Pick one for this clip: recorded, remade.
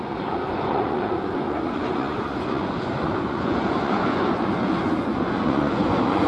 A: remade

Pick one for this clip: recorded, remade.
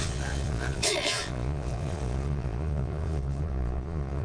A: remade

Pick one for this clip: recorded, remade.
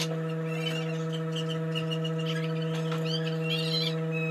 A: recorded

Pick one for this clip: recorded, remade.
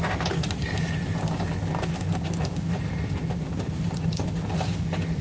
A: recorded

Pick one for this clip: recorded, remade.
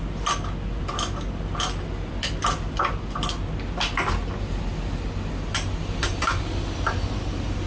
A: recorded